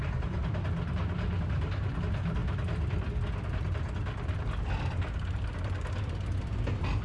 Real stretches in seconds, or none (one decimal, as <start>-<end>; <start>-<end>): 0.0-7.0